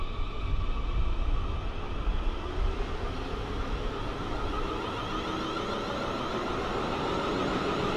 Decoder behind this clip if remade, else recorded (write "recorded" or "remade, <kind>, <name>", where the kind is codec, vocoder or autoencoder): recorded